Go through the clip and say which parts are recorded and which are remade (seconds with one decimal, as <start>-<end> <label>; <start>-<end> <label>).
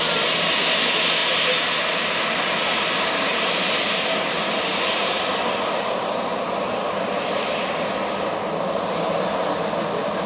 0.0-10.3 recorded